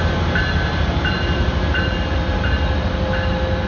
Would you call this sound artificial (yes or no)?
no